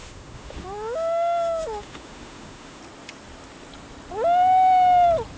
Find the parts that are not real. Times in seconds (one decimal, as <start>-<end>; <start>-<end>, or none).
0.0-2.8